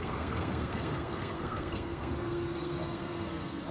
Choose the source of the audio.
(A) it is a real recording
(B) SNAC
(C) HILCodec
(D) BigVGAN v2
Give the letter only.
B